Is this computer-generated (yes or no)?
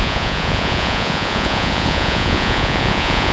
yes